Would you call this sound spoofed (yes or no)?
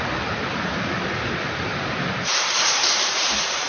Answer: yes